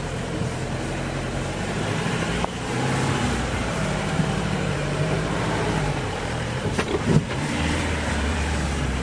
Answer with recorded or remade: remade